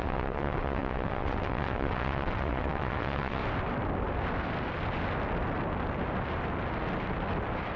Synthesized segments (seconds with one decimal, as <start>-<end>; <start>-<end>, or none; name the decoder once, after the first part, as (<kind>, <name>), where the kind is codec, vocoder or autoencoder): 0.0-3.4 (vocoder, WaveNeXt)